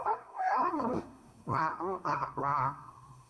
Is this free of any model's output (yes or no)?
no